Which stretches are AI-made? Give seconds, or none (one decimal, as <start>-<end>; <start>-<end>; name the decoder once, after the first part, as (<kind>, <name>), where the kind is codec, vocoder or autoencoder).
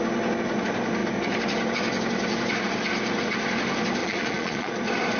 4.0-4.7 (vocoder, Vocos)